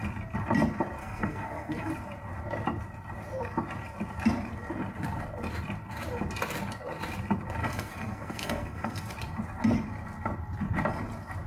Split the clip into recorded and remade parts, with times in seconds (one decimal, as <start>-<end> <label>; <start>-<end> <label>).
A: 0.0-1.0 recorded; 1.0-1.9 remade; 1.9-7.6 recorded; 7.6-9.1 remade; 9.1-11.5 recorded